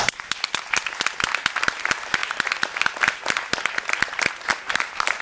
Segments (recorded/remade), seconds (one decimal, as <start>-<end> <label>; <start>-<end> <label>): 0.0-4.5 recorded; 4.5-5.2 remade